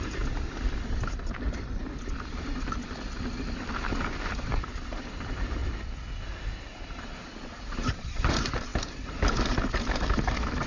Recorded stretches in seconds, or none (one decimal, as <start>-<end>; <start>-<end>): 0.0-10.7